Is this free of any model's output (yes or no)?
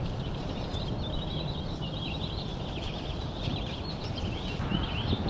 no